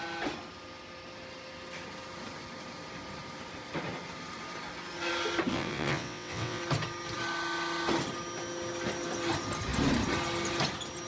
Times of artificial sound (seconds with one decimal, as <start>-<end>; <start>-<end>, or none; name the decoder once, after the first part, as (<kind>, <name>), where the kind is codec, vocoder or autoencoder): 5.5-6.6 (vocoder, WaveNeXt)